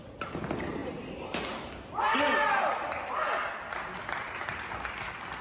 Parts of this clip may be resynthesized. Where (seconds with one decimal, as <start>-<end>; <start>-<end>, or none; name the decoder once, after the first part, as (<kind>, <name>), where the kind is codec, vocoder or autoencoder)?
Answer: none